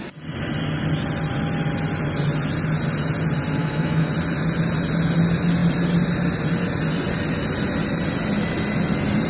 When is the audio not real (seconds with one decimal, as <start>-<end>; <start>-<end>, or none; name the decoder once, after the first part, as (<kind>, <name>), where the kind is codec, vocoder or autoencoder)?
3.6-4.1 (autoencoder, DAC-VAE)

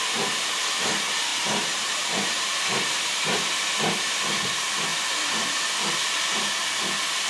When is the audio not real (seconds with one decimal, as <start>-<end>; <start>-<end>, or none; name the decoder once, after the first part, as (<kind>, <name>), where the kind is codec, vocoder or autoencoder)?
1.3-4.2 (vocoder, BigVGAN v2)

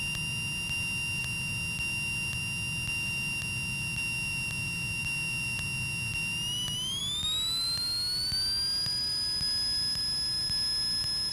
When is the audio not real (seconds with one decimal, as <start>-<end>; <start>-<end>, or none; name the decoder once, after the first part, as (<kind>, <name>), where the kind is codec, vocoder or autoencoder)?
none

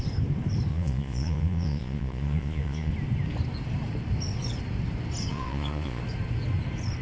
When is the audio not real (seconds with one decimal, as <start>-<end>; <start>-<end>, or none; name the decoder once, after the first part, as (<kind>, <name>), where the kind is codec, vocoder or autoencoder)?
0.7-2.9 (vocoder, Vocos); 5.3-6.0

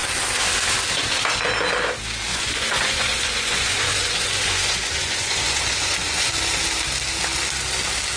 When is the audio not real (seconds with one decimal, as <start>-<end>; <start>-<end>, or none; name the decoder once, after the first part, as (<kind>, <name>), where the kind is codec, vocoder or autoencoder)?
2.3-6.3 (vocoder, Vocos)

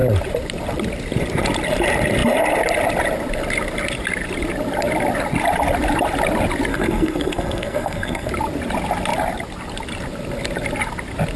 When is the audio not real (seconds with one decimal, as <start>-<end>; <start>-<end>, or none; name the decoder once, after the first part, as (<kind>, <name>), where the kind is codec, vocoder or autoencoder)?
6.7-8.3 (codec, SNAC)